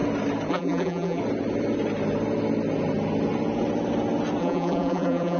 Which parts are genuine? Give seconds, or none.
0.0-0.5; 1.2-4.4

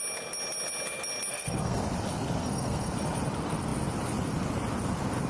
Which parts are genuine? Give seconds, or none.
0.0-1.3; 1.8-2.4; 2.9-5.3

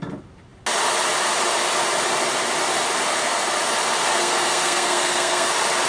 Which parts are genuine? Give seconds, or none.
0.0-4.2; 5.5-5.9

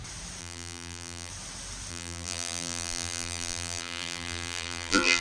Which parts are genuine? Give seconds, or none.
0.0-0.4; 1.3-1.9

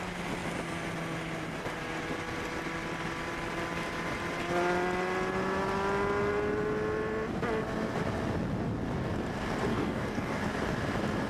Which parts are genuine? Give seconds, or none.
0.0-9.7; 10.4-11.3

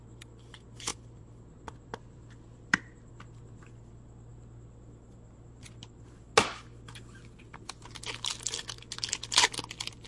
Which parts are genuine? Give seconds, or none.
0.0-0.9; 3.1-10.1

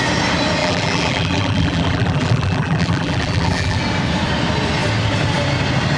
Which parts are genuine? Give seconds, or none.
0.0-0.6; 3.8-6.0